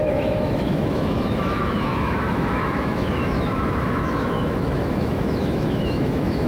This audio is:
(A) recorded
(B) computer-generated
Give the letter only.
B